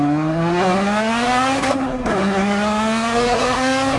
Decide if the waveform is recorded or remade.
remade